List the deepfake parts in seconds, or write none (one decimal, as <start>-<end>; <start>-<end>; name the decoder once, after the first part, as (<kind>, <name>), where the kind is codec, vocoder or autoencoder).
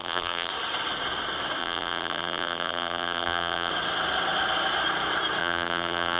0.0-0.5 (vocoder, BigVGAN v2); 1.6-3.7; 5.4-6.2